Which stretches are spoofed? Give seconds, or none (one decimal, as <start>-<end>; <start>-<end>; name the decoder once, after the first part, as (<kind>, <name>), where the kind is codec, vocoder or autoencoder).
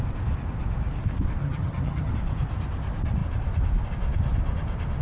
1.4-2.1 (vocoder, HiFi-GAN)